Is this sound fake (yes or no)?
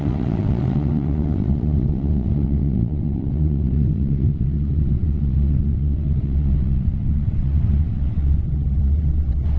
yes